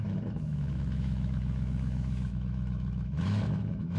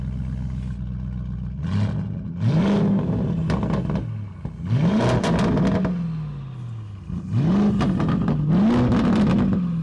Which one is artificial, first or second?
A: first